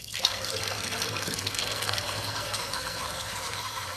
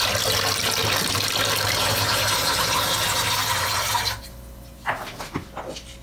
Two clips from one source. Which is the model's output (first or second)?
first